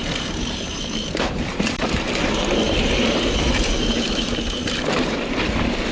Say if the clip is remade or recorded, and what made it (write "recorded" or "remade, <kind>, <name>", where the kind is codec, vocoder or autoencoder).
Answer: remade, vocoder, BigVGAN v2